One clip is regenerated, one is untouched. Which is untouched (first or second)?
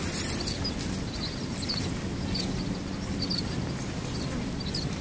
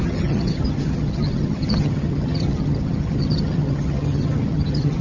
first